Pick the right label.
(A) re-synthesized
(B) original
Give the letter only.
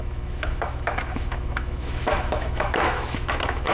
A